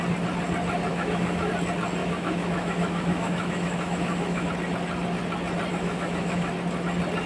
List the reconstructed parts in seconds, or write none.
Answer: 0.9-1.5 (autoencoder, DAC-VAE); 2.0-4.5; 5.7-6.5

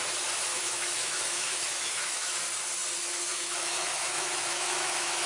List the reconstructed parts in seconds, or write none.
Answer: 0.5-2.3 (autoencoder, DAC-VAE); 3.3-5.3

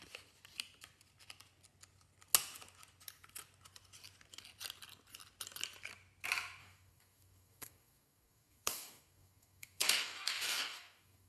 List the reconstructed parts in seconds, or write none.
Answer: 6.6-11.3 (codec, DAC)